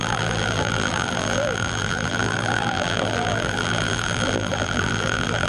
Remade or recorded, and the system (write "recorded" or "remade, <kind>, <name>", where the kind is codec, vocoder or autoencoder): remade, vocoder, BigVGAN v2